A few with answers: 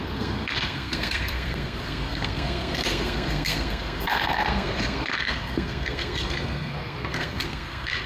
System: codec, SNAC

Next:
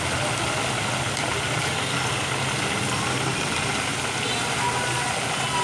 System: none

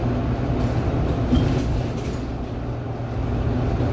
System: none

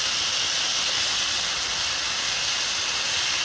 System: none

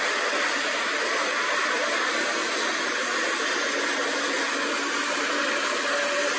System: none